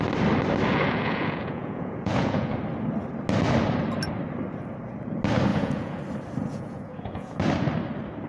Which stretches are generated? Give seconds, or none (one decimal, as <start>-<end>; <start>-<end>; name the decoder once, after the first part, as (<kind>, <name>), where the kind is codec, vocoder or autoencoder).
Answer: 0.7-2.6 (vocoder, Vocos); 5.5-6.0; 6.4-7.4